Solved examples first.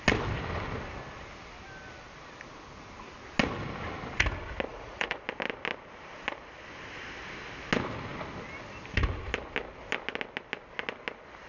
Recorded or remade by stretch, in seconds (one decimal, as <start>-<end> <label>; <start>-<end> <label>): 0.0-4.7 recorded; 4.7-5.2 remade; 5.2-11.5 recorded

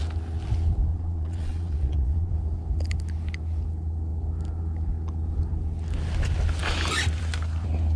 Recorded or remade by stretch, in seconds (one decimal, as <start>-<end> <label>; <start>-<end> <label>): 0.0-0.9 recorded; 0.9-2.3 remade; 2.3-8.0 recorded

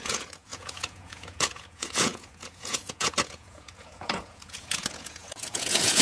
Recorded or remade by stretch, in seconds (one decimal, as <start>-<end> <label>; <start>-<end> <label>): 0.0-6.0 remade

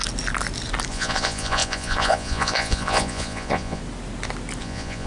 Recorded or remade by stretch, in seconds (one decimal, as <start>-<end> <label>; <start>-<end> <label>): 0.0-0.9 recorded; 0.9-3.8 remade; 3.8-4.6 recorded; 4.6-5.1 remade

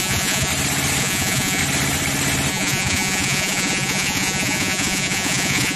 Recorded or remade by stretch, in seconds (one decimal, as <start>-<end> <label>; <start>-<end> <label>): 0.0-0.5 remade; 0.5-1.0 recorded; 1.0-1.6 remade; 1.6-2.5 recorded; 2.5-5.8 remade